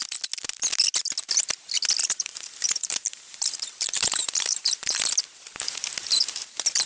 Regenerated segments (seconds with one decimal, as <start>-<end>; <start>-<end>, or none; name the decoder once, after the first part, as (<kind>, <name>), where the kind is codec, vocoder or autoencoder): 2.0-5.0 (vocoder, BigVGAN v2)